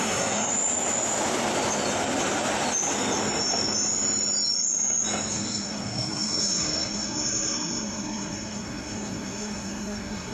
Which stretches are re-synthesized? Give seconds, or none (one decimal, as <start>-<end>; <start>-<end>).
0.0-0.5; 5.3-10.3

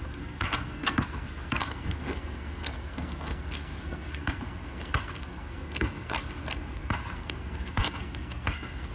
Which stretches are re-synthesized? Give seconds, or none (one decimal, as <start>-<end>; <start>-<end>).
0.0-8.9

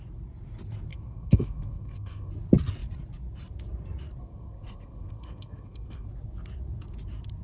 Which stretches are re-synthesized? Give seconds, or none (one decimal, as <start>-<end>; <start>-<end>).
0.9-2.3; 4.2-6.1

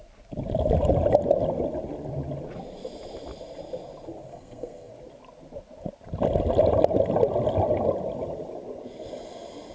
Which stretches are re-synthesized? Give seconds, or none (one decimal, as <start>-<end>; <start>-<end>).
4.3-4.9